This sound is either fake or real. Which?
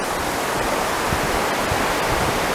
real